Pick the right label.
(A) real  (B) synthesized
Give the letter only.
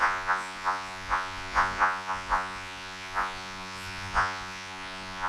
B